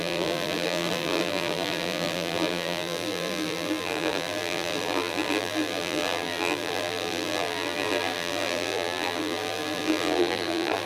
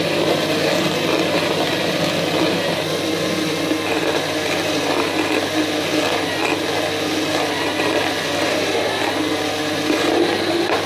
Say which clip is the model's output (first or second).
first